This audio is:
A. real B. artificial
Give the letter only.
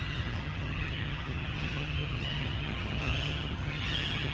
B